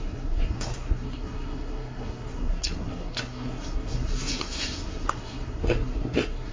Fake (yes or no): yes